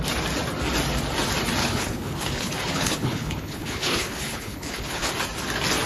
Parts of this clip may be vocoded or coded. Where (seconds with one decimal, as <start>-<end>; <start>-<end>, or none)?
1.6-5.1